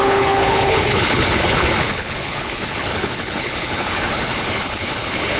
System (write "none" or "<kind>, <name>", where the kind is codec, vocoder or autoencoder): codec, HILCodec